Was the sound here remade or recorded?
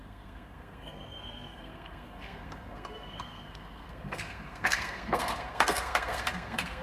remade